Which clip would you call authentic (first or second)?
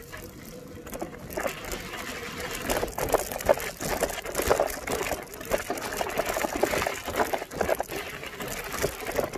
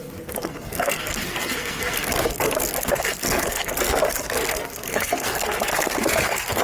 first